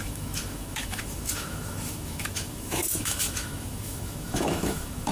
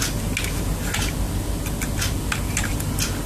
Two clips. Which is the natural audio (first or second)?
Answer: second